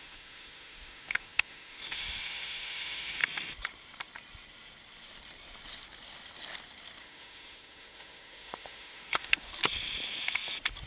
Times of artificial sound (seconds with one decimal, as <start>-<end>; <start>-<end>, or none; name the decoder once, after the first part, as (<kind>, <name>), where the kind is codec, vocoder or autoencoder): 0.0-3.2 (autoencoder, DAC-VAE); 7.0-9.5